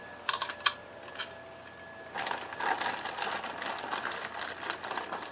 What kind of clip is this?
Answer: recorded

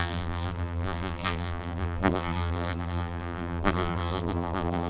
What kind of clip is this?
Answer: remade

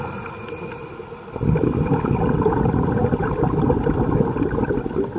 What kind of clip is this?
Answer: recorded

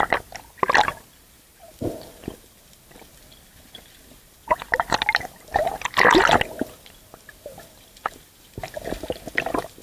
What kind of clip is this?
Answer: recorded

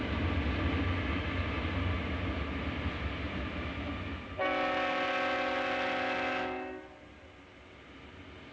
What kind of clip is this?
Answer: recorded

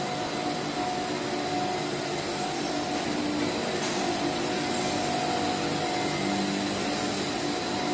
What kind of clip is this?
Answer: recorded